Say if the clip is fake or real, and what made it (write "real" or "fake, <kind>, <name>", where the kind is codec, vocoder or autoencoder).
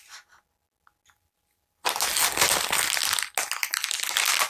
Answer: real